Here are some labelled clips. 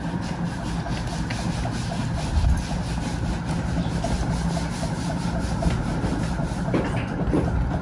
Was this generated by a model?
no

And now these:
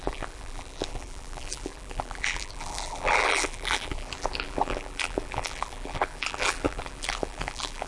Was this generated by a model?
yes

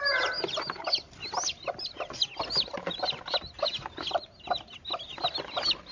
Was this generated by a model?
no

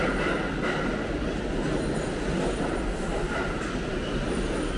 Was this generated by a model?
no